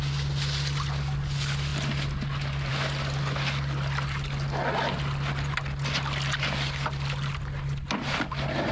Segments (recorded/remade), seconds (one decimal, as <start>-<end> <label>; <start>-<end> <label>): 0.0-8.7 recorded